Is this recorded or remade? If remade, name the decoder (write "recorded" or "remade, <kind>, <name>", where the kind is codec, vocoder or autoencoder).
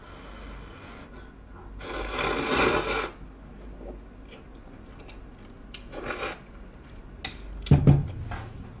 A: recorded